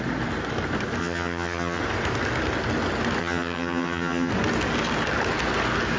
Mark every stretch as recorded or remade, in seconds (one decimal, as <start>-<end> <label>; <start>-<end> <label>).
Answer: 0.0-1.0 recorded; 1.0-1.8 remade; 1.8-3.2 recorded; 3.2-4.3 remade; 4.3-6.0 recorded